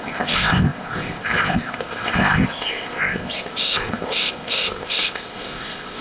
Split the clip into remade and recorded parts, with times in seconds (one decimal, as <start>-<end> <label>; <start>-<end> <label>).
0.0-6.0 remade